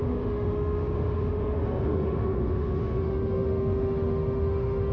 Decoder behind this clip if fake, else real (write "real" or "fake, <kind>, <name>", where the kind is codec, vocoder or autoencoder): fake, autoencoder, DAC-VAE